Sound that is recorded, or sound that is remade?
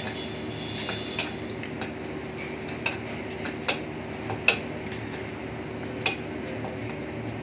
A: recorded